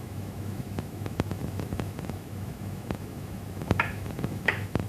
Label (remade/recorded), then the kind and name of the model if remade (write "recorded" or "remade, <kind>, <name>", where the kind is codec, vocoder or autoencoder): remade, autoencoder, DAC-VAE